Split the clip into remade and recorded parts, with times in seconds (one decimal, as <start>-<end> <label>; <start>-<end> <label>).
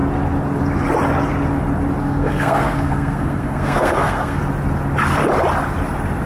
0.0-2.0 recorded; 2.0-4.4 remade; 4.4-6.3 recorded